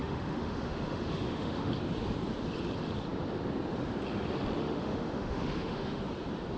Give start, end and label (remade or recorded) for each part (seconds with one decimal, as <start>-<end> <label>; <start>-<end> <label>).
0.0-1.7 remade; 1.7-4.6 recorded; 4.6-6.0 remade; 6.0-6.6 recorded